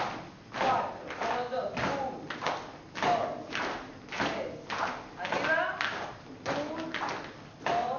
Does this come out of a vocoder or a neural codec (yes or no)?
no